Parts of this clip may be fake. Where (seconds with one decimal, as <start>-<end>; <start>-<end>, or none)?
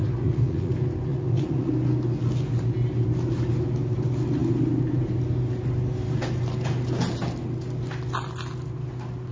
0.0-0.7; 1.1-1.7